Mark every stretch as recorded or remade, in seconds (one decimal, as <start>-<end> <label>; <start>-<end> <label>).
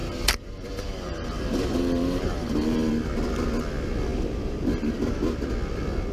0.0-2.9 remade; 2.9-6.1 recorded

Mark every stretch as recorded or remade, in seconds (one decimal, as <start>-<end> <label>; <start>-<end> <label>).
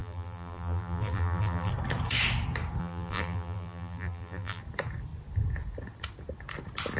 0.0-1.7 remade; 1.7-2.8 recorded; 2.8-4.6 remade; 4.6-7.0 recorded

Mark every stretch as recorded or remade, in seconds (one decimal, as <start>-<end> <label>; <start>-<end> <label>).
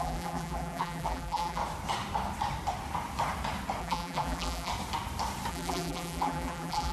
0.0-1.6 remade; 1.6-3.8 recorded; 3.8-4.7 remade; 4.7-5.5 recorded; 5.5-6.9 remade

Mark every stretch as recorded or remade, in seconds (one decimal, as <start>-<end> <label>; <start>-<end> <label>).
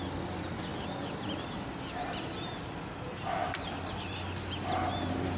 0.0-5.4 recorded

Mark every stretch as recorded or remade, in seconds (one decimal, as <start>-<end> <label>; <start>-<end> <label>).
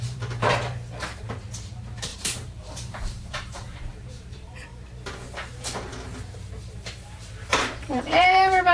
0.0-4.7 remade; 4.7-6.6 recorded; 6.6-8.7 remade